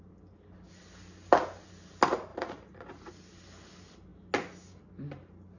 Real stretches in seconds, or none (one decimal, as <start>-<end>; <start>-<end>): 0.0-2.3; 3.1-5.6